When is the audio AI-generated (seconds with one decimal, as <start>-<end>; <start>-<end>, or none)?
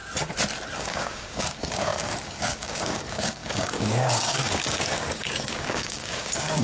0.8-6.6